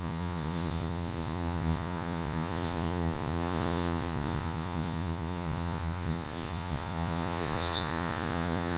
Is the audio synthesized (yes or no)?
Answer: yes